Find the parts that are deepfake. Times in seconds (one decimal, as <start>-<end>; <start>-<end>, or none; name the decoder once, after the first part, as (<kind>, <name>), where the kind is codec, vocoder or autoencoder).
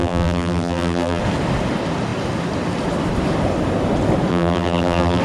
0.0-1.2 (vocoder, BigVGAN v2); 4.3-5.2